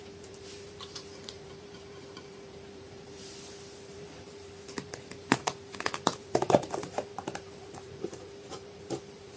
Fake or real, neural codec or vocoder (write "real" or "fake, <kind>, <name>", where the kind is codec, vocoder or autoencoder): fake, vocoder, BigVGAN v2